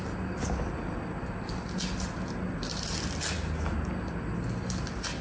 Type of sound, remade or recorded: recorded